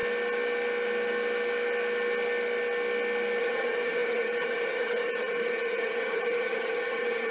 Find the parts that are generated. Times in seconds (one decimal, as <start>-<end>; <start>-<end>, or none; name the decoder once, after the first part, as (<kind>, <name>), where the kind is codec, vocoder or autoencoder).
3.4-7.3 (vocoder, HiFi-GAN)